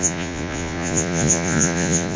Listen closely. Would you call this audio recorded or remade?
remade